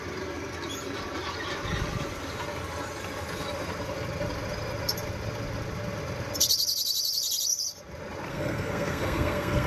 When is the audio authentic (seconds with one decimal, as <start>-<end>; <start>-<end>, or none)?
0.0-8.3